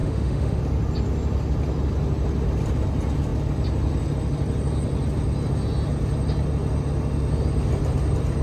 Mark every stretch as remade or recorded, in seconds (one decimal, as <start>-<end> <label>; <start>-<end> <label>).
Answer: 0.0-0.6 remade; 0.6-8.4 recorded